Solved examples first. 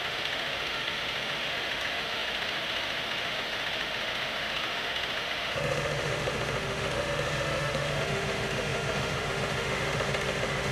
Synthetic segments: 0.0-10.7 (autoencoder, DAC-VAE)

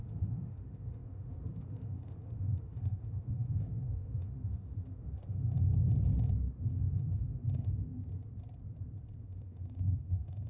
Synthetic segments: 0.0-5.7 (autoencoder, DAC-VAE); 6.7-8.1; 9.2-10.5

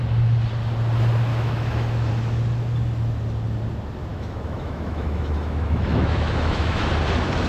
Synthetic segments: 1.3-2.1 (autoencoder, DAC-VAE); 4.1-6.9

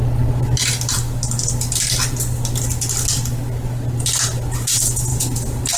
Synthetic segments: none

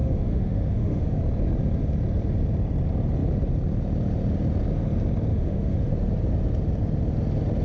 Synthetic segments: 0.0-1.2 (autoencoder, DAC-VAE); 5.3-5.9

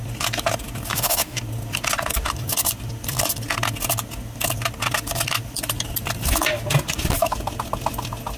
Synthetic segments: 0.9-1.4 (autoencoder, DAC-VAE)